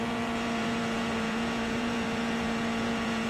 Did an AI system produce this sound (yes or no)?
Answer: yes